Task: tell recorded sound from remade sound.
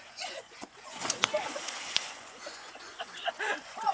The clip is remade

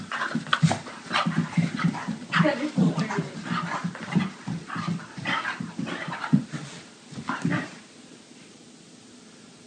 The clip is recorded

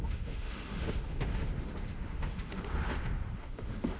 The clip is remade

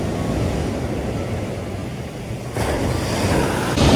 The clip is recorded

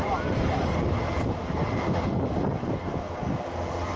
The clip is recorded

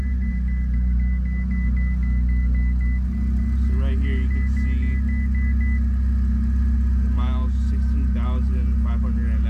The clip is recorded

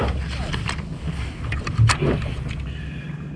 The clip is recorded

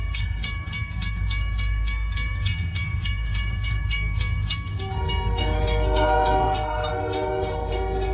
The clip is remade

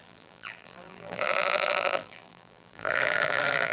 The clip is remade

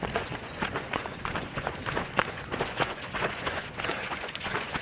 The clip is remade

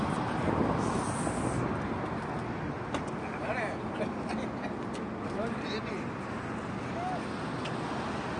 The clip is recorded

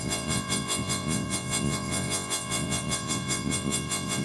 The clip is remade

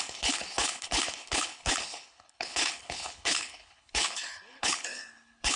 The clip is remade